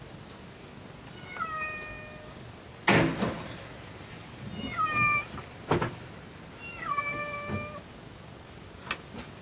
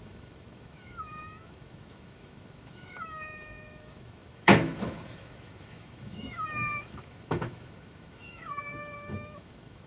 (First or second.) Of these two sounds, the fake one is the second